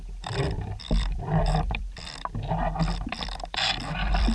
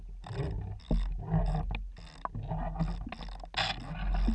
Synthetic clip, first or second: first